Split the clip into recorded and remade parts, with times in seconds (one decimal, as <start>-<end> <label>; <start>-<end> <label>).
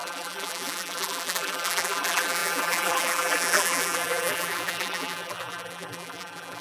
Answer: 0.0-6.6 remade